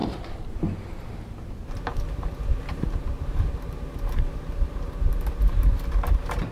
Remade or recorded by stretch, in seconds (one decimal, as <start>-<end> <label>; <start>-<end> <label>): 0.0-1.9 recorded; 1.9-5.8 remade; 5.8-6.5 recorded